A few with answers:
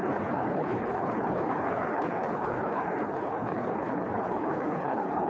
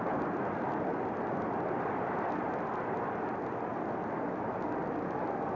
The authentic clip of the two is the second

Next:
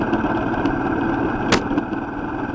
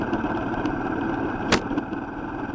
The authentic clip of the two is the first